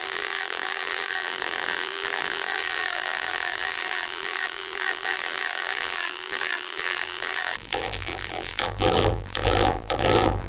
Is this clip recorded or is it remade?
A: remade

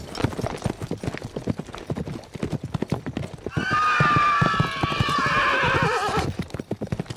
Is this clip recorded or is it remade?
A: recorded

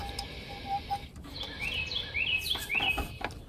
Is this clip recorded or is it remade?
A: recorded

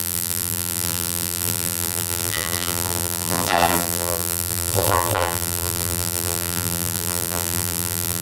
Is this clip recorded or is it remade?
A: remade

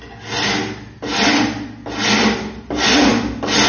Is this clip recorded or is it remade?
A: recorded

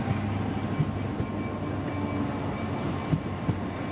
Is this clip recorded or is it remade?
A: recorded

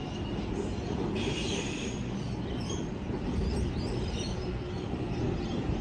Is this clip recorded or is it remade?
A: recorded